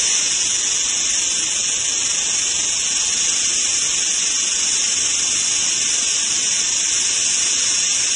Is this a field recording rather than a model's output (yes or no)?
yes